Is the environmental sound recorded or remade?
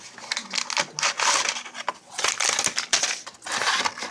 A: recorded